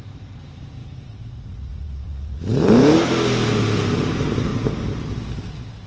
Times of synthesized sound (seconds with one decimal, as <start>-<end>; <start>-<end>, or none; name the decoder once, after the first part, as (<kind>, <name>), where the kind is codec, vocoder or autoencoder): 0.8-2.4 (vocoder, Vocos)